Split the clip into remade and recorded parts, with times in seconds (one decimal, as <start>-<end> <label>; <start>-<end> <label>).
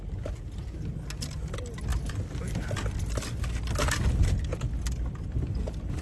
0.0-6.0 recorded